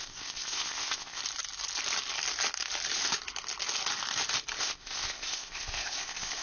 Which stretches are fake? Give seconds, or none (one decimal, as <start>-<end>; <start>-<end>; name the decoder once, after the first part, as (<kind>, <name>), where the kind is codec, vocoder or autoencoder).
0.0-1.2 (codec, ZipCodec); 4.6-6.4